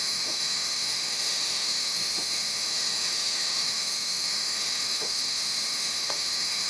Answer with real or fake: fake